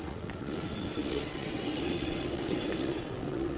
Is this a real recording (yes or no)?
no